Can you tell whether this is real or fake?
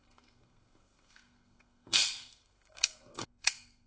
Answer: fake